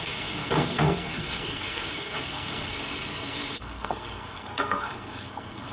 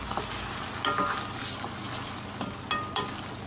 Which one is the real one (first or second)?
second